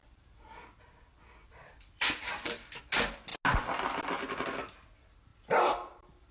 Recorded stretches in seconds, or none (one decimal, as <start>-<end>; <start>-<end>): 2.8-5.3